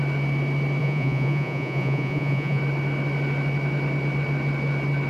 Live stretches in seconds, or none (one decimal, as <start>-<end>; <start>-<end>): 0.0-0.8; 2.6-5.1